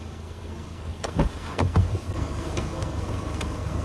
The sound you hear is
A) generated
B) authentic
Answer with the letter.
A